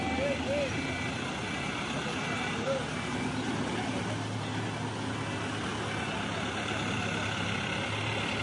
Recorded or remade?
recorded